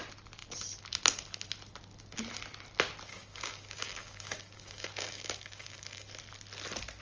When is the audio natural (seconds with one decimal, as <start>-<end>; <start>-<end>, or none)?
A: 0.0-3.1; 6.1-7.0